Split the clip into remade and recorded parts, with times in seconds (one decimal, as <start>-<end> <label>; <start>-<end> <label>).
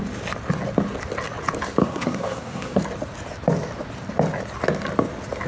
0.0-1.8 recorded; 1.8-2.8 remade; 2.8-5.5 recorded